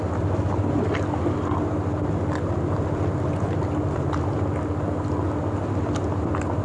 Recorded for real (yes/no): yes